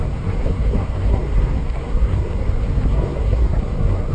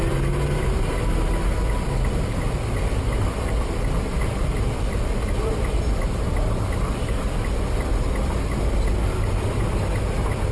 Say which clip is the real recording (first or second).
second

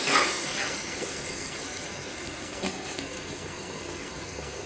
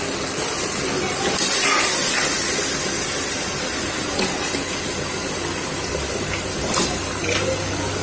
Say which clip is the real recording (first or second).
second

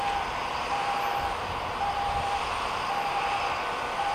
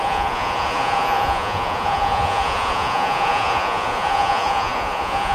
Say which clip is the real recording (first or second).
first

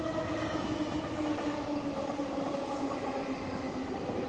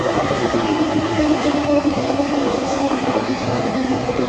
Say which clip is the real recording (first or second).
first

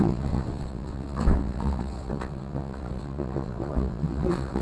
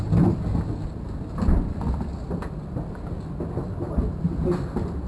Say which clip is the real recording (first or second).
second